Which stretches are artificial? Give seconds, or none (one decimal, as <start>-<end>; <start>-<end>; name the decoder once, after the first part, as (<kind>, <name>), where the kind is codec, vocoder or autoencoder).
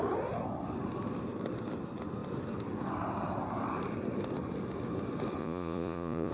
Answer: 5.4-6.3 (vocoder, Vocos)